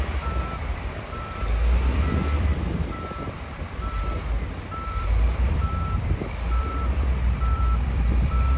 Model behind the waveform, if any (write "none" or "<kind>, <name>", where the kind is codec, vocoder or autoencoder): vocoder, BigVGAN v2